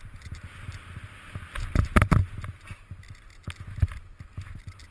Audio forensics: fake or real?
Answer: real